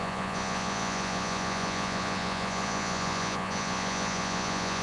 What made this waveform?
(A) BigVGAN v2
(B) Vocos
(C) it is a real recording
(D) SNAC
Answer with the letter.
B